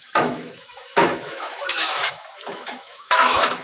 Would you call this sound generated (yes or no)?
yes